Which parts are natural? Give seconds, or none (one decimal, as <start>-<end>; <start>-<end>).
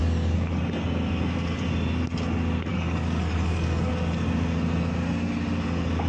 0.6-2.7; 3.9-6.1